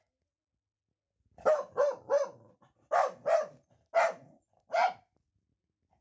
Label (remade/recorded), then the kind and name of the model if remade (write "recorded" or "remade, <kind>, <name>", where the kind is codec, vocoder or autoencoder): recorded